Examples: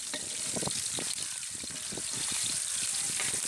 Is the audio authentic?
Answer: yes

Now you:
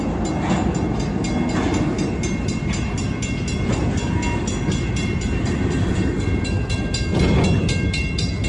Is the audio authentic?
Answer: yes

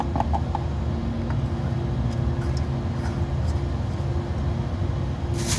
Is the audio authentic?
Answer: yes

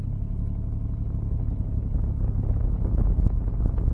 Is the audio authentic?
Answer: yes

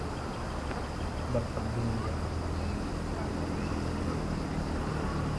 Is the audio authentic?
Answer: yes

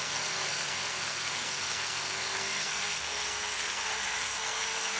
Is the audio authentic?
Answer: no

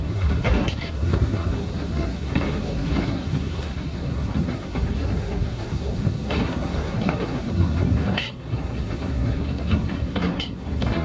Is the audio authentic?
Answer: no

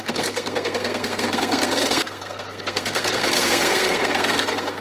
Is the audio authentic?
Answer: no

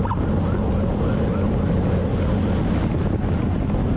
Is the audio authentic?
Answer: yes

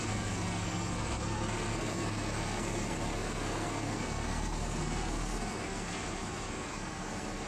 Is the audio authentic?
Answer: no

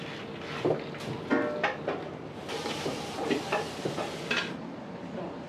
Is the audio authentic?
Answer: yes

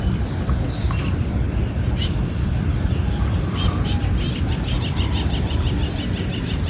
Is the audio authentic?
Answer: yes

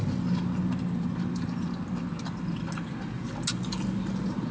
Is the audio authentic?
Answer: yes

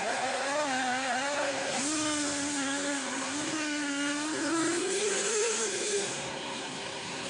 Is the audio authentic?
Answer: no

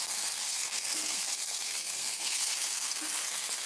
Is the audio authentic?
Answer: no